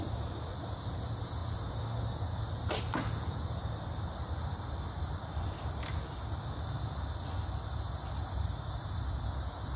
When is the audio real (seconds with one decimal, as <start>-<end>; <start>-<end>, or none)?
0.0-9.8